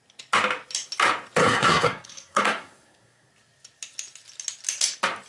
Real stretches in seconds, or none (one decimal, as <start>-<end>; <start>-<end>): 0.0-1.4; 3.3-5.3